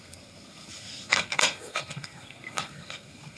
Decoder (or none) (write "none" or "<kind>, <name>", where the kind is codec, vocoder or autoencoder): codec, SNAC